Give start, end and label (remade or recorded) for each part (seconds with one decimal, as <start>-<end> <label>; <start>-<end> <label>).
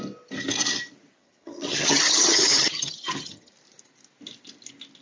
0.0-1.2 recorded; 1.2-3.5 remade; 3.5-5.0 recorded